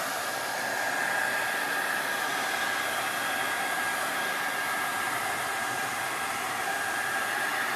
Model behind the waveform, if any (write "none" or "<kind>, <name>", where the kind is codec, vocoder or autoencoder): vocoder, BigVGAN v2